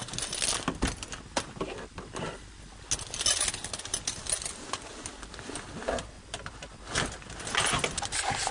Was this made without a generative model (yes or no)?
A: yes